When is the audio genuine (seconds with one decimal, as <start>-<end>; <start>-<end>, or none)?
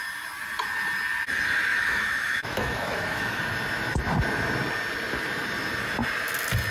0.0-1.7; 3.4-6.7